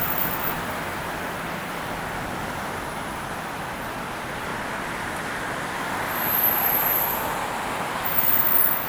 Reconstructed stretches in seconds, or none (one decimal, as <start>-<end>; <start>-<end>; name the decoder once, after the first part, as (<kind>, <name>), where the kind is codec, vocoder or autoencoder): 0.0-4.5 (vocoder, BigVGAN v2); 5.8-8.9